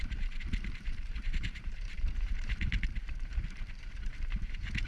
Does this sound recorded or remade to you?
remade